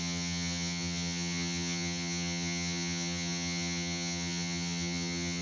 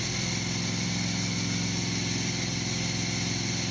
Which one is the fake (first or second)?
first